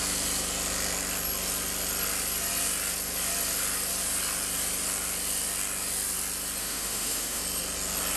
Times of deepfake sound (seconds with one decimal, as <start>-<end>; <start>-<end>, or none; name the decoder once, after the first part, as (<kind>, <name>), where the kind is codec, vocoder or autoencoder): 6.6-7.4 (autoencoder, DAC-VAE)